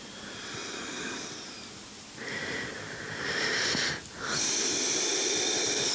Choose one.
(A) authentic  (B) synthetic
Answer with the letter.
A